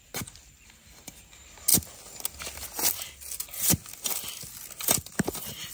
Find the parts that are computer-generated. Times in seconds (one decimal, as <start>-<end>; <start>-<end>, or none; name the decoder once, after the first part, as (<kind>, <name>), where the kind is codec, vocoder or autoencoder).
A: none